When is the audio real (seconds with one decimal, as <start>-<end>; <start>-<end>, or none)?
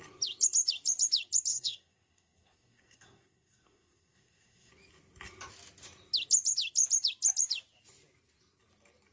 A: 0.0-1.5; 4.7-9.1